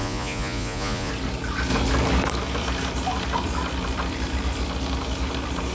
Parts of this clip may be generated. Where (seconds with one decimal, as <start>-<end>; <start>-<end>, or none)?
0.0-1.1